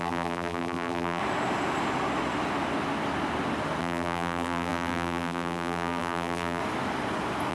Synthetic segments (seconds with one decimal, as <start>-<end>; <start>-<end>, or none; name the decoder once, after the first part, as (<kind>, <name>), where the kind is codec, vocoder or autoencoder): 0.0-1.2 (vocoder, BigVGAN v2); 3.8-6.6